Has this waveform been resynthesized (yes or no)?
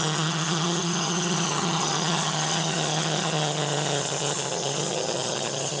yes